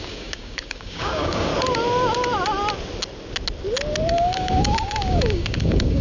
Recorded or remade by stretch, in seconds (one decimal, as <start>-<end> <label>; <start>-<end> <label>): 0.0-1.5 remade; 1.5-4.1 recorded; 4.1-6.0 remade